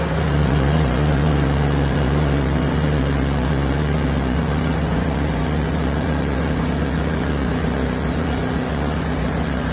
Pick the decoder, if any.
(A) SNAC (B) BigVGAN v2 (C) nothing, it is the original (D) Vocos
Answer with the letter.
D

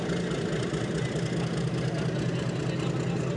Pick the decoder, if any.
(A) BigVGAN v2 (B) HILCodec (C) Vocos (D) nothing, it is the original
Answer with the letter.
D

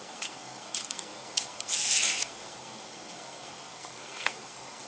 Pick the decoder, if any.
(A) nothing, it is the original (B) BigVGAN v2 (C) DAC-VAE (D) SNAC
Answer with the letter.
D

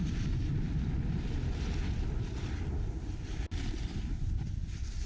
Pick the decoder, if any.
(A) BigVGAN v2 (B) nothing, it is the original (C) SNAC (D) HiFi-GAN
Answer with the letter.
A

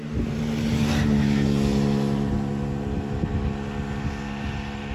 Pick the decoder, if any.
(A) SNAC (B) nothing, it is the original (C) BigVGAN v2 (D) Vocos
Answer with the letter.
B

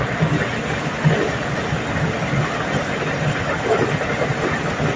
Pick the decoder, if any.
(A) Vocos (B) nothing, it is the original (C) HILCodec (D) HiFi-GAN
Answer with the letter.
B